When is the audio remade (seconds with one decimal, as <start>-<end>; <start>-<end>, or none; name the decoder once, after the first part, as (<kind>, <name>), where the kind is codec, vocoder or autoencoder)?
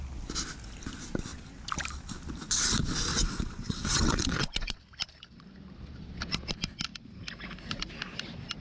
3.1-4.8 (vocoder, WaveNeXt)